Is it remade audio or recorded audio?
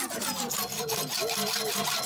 recorded